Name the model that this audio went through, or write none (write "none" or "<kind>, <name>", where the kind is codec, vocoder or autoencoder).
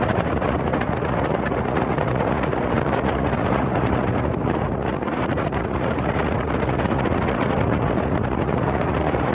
vocoder, Vocos